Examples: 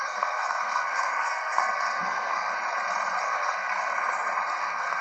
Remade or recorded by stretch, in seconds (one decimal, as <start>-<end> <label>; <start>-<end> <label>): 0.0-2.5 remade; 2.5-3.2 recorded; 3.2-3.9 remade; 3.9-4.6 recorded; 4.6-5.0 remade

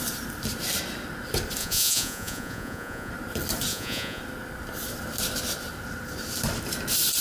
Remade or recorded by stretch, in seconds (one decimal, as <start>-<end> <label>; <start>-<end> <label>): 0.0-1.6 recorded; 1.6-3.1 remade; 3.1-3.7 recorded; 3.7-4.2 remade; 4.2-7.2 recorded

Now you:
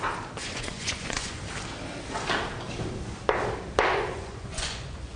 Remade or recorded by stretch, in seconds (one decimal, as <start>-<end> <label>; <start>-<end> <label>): 0.0-0.4 recorded; 0.4-1.4 remade; 1.4-3.9 recorded; 3.9-5.2 remade

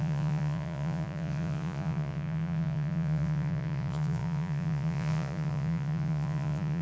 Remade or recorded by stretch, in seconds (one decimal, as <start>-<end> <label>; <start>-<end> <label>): 0.0-6.8 remade

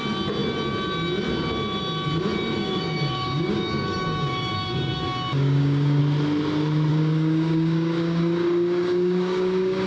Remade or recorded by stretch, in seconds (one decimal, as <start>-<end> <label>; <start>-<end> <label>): 0.0-2.6 recorded; 2.6-6.0 remade; 6.0-6.9 recorded; 6.9-9.9 remade

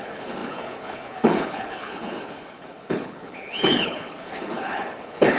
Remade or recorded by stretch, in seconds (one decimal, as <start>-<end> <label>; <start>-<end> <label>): 0.0-5.4 remade

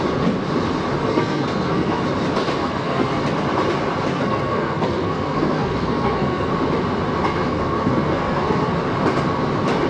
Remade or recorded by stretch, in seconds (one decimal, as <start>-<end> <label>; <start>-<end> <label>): 0.0-1.0 recorded; 1.0-2.0 remade; 2.0-2.6 recorded; 2.6-3.2 remade; 3.2-4.1 recorded; 4.1-6.5 remade; 6.5-7.5 recorded; 7.5-8.7 remade; 8.7-9.9 recorded

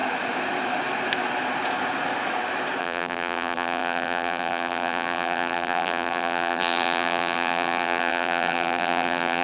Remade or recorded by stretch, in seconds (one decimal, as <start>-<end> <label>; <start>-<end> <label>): 0.0-2.8 recorded; 2.8-9.4 remade